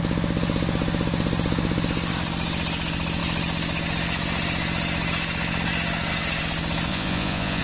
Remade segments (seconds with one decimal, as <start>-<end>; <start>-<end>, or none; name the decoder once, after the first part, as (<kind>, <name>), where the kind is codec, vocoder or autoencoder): 6.9-7.6 (vocoder, Vocos)